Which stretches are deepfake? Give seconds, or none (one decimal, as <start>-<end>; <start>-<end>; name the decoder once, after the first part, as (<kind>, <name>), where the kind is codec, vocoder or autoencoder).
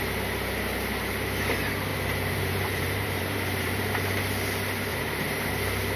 1.9-4.2 (vocoder, BigVGAN v2); 4.9-5.5